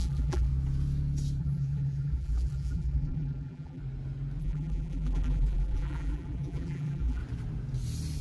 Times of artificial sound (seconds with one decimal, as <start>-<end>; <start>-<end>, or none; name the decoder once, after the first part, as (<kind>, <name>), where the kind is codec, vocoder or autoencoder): 0.0-0.5 (vocoder, BigVGAN v2); 1.4-3.8; 4.4-7.2